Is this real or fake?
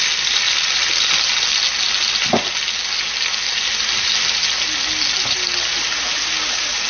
real